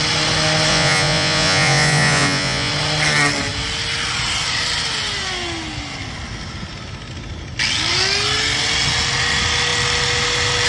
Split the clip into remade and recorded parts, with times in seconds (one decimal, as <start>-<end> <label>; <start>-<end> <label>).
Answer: 0.0-0.7 recorded; 0.7-2.7 remade; 2.7-10.7 recorded